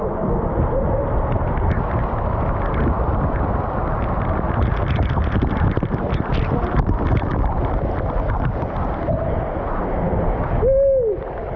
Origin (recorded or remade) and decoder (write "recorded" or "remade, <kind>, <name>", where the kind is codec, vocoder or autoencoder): recorded